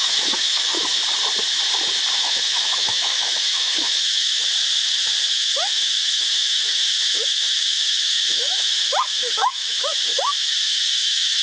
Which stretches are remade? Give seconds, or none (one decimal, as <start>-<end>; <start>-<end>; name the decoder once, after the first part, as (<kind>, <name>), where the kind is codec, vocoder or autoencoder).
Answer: 0.0-1.0 (autoencoder, DAC-VAE); 2.2-4.4; 5.3-11.4